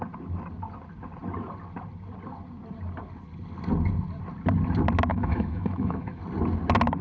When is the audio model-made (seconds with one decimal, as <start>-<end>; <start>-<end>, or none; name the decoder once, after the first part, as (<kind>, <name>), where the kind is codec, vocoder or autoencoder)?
5.1-6.2 (autoencoder, DAC-VAE)